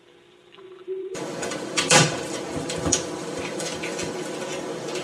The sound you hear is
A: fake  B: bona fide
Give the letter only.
A